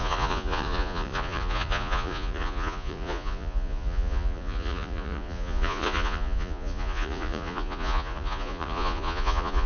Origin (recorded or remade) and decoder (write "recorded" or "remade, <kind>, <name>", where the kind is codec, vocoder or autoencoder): remade, vocoder, Vocos